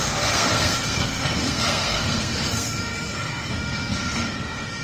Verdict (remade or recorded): remade